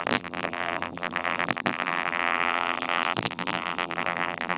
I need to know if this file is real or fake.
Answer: fake